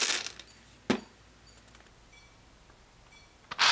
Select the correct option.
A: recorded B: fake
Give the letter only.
A